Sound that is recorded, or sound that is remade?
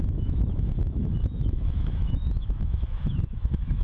remade